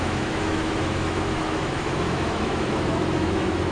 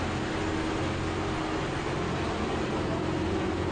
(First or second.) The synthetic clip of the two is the first